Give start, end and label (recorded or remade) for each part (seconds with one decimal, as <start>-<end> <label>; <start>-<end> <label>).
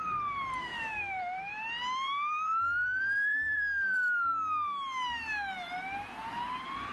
0.0-4.3 remade; 4.3-6.9 recorded